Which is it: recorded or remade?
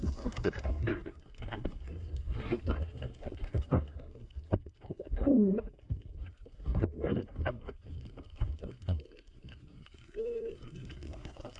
remade